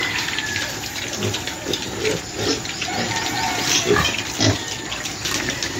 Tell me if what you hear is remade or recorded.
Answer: recorded